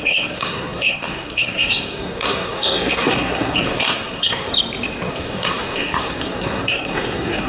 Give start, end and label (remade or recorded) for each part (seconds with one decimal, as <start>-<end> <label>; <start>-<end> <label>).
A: 0.0-4.5 remade; 4.5-5.1 recorded; 5.1-7.5 remade